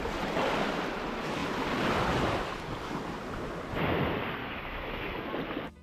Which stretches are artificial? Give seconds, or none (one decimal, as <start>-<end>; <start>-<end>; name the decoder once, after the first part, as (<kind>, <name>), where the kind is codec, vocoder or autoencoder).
4.4-5.2 (autoencoder, DAC-VAE)